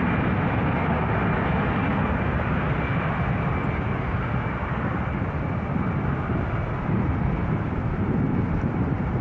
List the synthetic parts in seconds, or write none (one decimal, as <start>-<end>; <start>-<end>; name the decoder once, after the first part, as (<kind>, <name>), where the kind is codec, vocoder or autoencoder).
none